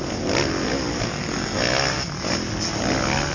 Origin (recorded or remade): recorded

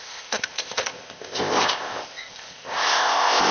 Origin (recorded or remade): remade